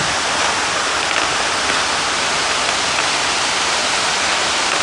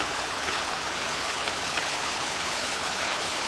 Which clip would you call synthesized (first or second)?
second